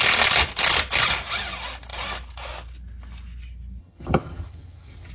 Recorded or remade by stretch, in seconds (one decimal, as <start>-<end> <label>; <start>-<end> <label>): 0.0-3.8 recorded; 3.8-5.1 remade